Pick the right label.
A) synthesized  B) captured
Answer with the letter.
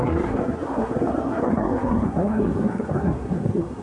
A